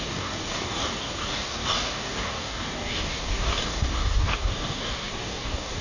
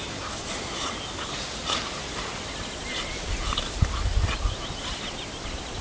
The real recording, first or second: second